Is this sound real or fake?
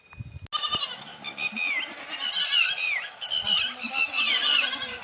real